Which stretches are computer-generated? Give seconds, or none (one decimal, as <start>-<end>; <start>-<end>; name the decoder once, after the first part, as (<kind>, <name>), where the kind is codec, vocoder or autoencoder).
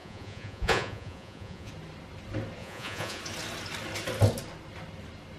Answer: 0.0-1.7 (vocoder, Vocos); 2.6-3.2